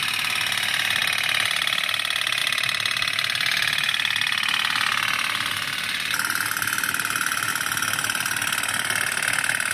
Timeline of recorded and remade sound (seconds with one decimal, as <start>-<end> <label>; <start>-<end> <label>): 0.0-9.7 recorded